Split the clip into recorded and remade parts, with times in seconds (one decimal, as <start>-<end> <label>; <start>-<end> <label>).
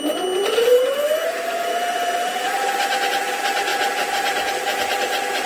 0.0-0.7 recorded; 0.7-3.1 remade; 3.1-3.7 recorded; 3.7-4.5 remade; 4.5-5.5 recorded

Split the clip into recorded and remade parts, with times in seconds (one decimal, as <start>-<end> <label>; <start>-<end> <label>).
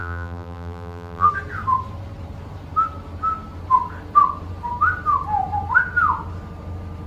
0.0-1.3 remade; 1.3-7.1 recorded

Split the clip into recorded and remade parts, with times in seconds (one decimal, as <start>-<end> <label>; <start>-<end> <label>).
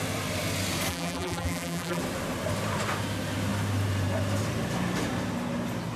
0.0-0.9 recorded; 0.9-2.0 remade; 2.0-6.0 recorded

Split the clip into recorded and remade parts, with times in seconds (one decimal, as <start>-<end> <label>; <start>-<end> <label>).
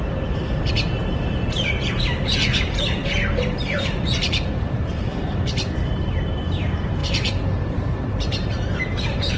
0.0-3.0 remade; 3.0-3.7 recorded; 3.7-9.4 remade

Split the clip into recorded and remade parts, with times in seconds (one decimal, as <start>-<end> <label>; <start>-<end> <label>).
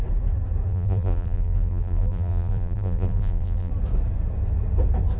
0.0-0.7 recorded; 0.7-3.7 remade; 3.7-5.2 recorded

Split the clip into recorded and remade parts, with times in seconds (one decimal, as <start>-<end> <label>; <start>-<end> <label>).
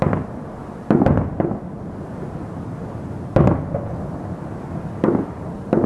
0.0-5.9 recorded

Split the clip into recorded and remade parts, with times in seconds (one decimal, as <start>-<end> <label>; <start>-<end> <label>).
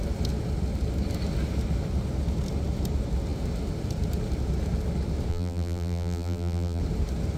0.0-5.3 recorded; 5.3-6.8 remade; 6.8-7.4 recorded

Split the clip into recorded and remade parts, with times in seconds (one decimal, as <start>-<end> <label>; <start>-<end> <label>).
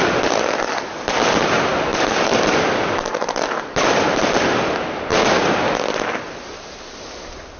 0.0-1.9 recorded; 1.9-4.4 remade; 4.4-5.1 recorded; 5.1-5.7 remade; 5.7-7.6 recorded